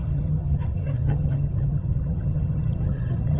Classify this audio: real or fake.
fake